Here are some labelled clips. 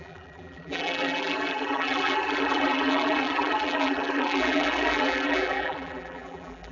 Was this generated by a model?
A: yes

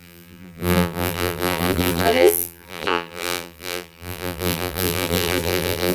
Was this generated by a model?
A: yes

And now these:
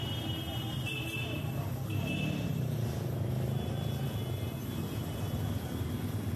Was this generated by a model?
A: no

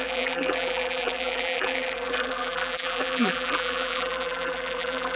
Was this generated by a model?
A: yes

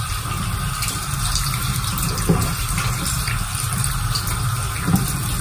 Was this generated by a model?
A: no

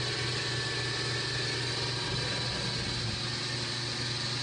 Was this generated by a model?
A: no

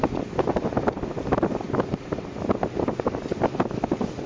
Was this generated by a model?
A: no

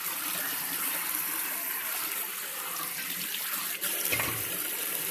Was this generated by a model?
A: yes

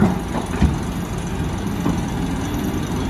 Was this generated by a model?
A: no